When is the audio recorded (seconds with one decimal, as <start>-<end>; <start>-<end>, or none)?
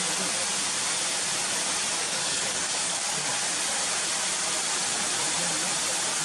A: 0.0-2.0; 3.3-6.2